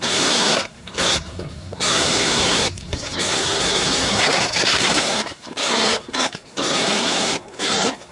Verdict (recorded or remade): remade